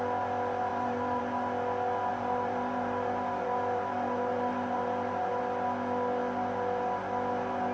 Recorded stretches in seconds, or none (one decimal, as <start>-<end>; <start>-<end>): 0.0-0.7; 1.2-2.1; 5.4-7.7